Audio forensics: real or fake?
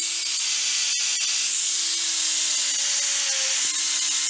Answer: real